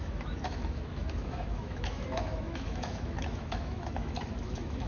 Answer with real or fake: fake